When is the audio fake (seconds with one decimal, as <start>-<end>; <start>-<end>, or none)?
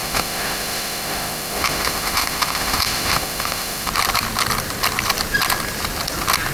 0.0-3.9